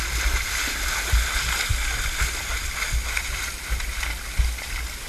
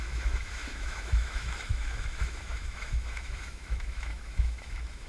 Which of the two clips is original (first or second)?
first